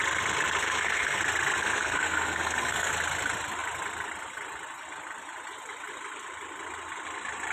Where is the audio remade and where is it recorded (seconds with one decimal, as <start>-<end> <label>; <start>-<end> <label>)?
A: 0.0-0.6 recorded; 0.6-1.2 remade; 1.2-1.6 recorded; 1.6-2.9 remade; 2.9-7.5 recorded